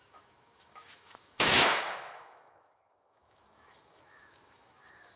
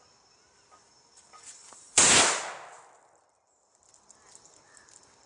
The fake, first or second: first